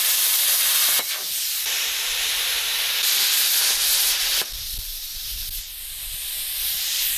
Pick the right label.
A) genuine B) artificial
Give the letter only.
B